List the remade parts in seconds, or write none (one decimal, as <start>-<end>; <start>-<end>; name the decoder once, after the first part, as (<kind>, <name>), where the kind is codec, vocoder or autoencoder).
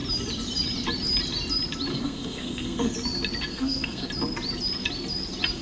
1.9-2.9 (codec, SNAC); 3.5-4.1